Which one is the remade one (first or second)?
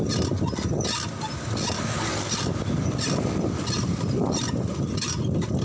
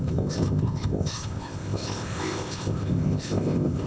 second